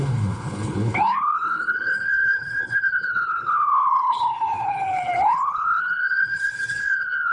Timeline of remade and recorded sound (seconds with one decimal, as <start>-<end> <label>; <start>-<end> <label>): 0.0-7.3 remade